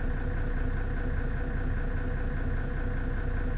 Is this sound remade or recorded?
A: recorded